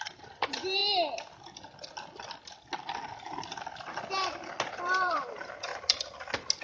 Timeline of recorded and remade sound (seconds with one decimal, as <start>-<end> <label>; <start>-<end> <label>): 0.0-0.8 remade; 0.8-4.8 recorded; 4.8-5.7 remade; 5.7-6.6 recorded